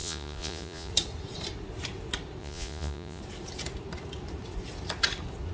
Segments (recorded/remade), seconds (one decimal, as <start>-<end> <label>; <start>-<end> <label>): 0.0-0.9 remade; 0.9-2.4 recorded; 2.4-3.2 remade; 3.2-5.5 recorded